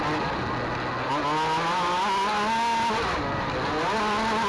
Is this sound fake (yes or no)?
no